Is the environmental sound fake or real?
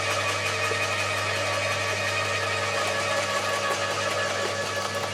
real